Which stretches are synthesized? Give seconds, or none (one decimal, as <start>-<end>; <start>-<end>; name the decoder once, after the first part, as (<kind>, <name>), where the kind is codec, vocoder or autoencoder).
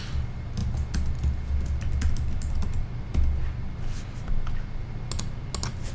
none